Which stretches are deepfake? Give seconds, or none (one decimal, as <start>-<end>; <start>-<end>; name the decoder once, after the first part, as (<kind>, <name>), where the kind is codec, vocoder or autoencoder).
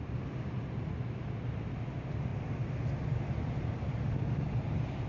none